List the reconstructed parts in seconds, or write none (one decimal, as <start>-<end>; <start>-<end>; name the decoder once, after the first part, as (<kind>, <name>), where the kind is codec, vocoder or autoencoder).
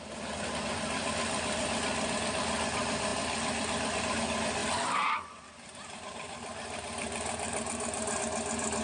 4.6-8.2 (vocoder, BigVGAN v2)